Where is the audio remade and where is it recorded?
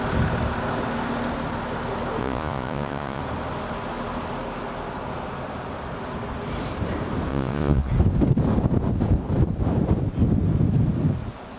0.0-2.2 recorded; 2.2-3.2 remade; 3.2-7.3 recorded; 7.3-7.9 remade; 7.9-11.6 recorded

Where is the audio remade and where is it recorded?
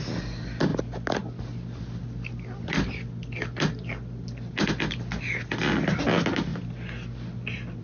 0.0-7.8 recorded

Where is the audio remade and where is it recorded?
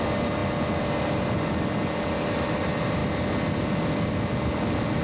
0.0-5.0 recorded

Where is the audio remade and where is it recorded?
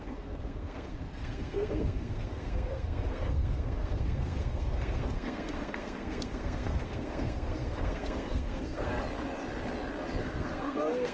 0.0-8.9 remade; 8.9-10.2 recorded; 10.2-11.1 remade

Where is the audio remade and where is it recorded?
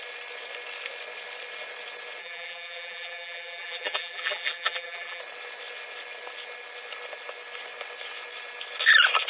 0.0-2.2 recorded; 2.2-5.2 remade; 5.2-9.3 recorded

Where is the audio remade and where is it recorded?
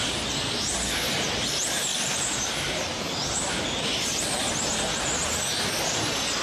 0.0-6.4 recorded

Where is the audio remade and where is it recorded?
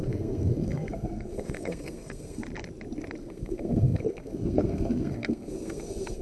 0.0-2.4 remade; 2.4-3.2 recorded; 3.2-6.2 remade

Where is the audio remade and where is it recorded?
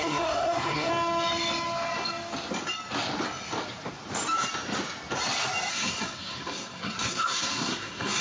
0.0-0.9 remade; 0.9-5.7 recorded; 5.7-8.2 remade